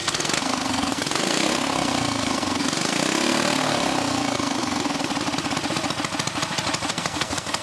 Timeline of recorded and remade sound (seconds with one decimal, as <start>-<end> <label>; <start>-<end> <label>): 0.0-5.1 remade; 5.1-6.9 recorded; 6.9-7.6 remade